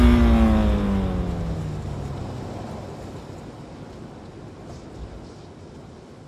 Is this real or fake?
real